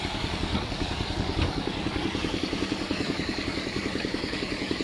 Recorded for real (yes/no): no